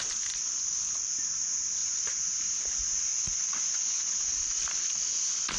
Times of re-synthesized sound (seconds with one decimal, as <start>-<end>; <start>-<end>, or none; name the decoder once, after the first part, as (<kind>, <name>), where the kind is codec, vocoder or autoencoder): 1.8-2.4 (vocoder, Vocos); 3.1-4.0